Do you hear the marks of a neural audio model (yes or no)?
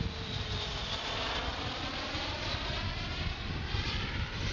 no